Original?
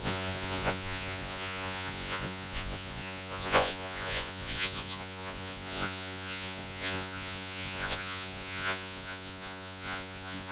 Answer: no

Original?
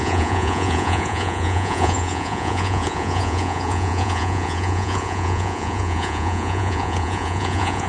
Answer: no